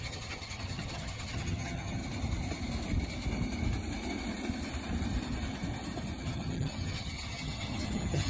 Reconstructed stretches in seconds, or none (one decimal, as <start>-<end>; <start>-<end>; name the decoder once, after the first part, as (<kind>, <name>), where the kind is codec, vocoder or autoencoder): 0.0-2.0 (vocoder, HiFi-GAN); 6.2-8.3